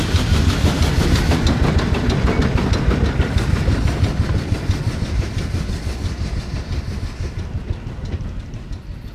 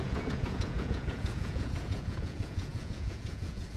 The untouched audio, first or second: first